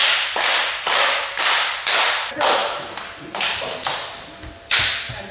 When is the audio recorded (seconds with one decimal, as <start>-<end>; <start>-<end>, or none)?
0.0-5.3